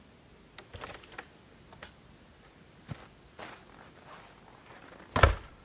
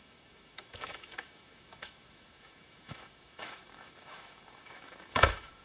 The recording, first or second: first